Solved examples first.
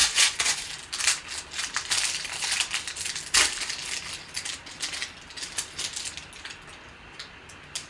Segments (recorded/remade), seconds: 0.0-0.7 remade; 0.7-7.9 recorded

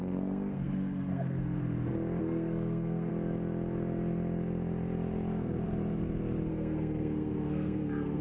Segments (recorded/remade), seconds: 0.0-1.6 remade; 1.6-2.2 recorded; 2.2-3.1 remade; 3.1-6.5 recorded; 6.5-8.2 remade

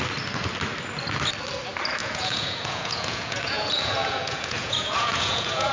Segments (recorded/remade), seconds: 0.0-2.0 recorded; 2.0-5.7 remade

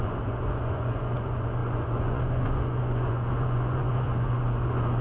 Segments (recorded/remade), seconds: 0.0-5.0 remade

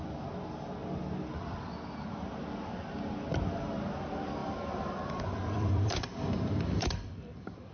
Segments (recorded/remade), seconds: 0.0-4.4 recorded; 4.4-7.7 remade

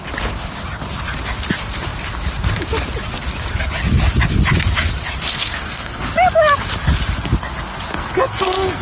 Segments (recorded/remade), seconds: 0.0-5.3 recorded; 5.3-6.0 remade; 6.0-7.9 recorded; 7.9-8.8 remade

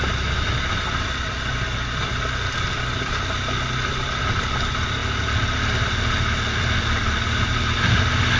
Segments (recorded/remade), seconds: 0.0-8.4 recorded

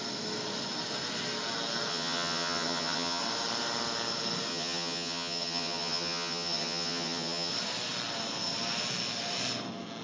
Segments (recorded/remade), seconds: 0.0-1.9 recorded; 1.9-3.2 remade; 3.2-4.5 recorded; 4.5-7.5 remade; 7.5-10.0 recorded